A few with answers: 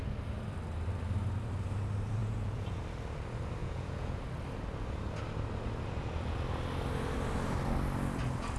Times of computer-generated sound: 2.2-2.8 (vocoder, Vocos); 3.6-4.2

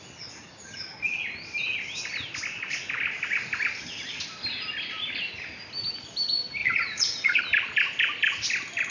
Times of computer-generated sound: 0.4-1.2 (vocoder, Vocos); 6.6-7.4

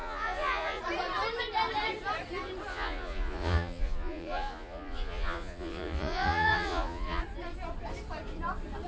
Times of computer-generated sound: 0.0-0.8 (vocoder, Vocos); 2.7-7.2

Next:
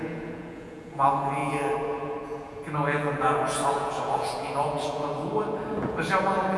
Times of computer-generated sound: 0.0-6.6 (vocoder, Vocos)

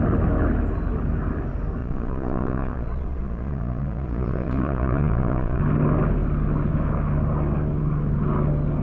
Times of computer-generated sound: 1.8-5.6 (vocoder, Vocos)

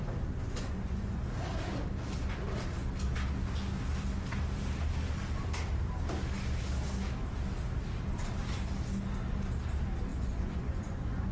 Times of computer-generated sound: 0.4-1.2 (vocoder, Vocos); 10.1-11.3